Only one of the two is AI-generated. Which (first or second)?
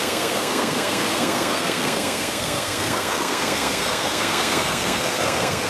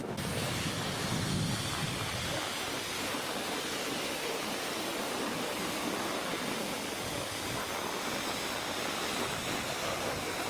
first